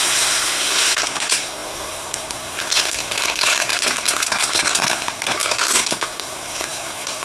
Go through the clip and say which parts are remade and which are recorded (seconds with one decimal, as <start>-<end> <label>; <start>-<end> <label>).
0.0-7.2 remade

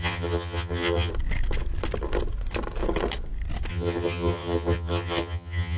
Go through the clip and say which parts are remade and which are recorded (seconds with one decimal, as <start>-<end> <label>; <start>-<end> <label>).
0.0-1.1 remade; 1.1-3.7 recorded; 3.7-5.8 remade

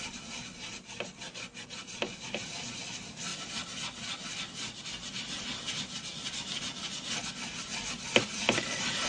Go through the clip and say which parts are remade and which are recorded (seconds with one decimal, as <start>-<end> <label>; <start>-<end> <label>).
0.0-9.1 recorded